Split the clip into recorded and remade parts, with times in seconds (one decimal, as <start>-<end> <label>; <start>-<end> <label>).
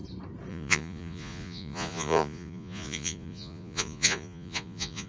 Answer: 0.0-0.5 recorded; 0.5-5.1 remade